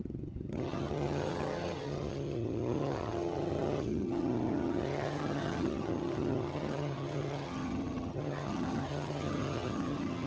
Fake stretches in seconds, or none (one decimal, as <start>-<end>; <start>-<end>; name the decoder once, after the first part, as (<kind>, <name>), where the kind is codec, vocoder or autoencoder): 0.0-10.3 (vocoder, HiFi-GAN)